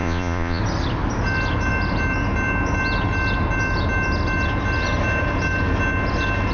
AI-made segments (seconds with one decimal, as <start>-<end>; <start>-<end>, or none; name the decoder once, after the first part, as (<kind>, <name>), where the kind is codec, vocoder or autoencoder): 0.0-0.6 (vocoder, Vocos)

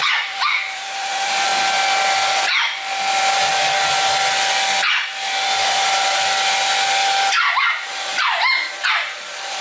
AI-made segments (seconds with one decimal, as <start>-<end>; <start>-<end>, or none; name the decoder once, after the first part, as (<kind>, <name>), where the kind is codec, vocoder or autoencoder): 0.0-1.5 (vocoder, BigVGAN v2); 3.1-3.5; 7.7-9.6

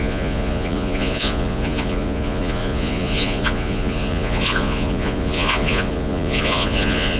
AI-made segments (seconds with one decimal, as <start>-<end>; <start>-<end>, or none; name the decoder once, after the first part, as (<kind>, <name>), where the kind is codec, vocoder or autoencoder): 0.0-7.2 (vocoder, Vocos)